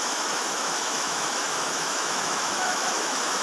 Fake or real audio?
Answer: fake